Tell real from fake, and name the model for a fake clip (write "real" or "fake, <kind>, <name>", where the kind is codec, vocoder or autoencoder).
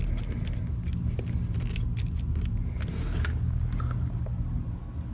real